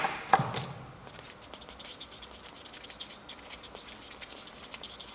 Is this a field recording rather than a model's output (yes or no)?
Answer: yes